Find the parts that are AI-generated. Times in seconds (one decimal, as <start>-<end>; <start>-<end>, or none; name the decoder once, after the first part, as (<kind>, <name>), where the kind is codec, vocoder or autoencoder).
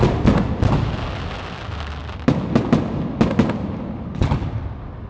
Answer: none